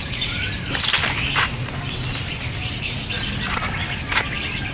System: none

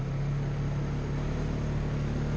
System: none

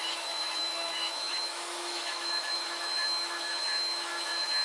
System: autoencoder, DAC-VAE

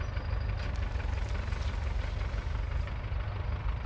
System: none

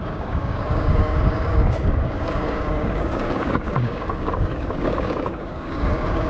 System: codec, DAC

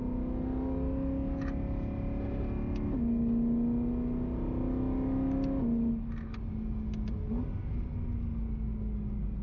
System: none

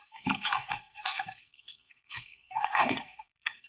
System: codec, SNAC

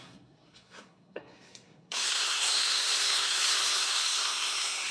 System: codec, SNAC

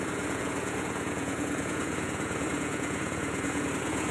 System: vocoder, Vocos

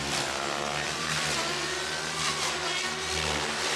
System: none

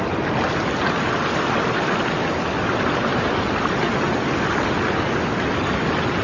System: none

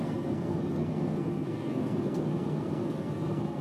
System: codec, SNAC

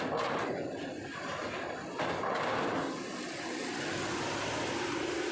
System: none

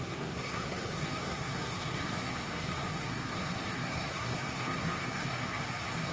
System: codec, SNAC